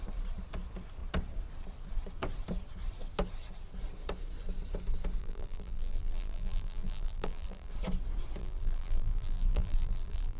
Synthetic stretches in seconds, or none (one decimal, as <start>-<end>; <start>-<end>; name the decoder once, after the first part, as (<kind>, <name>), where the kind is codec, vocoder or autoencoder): 5.2-7.7 (vocoder, BigVGAN v2); 8.4-10.4